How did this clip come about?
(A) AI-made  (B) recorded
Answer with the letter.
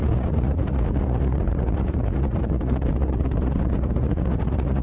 A